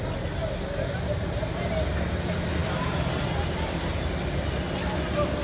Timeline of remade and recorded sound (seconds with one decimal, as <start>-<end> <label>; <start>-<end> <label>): 0.0-5.4 recorded